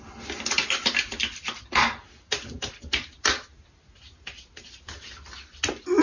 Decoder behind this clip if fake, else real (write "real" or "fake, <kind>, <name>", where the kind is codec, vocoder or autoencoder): real